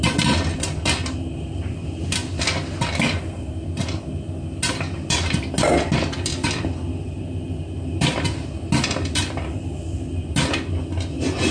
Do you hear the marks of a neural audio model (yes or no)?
no